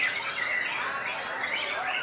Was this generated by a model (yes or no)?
no